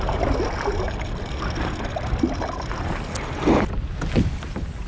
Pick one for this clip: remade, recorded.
recorded